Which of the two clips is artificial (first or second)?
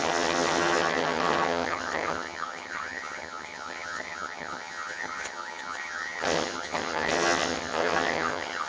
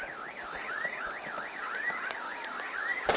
first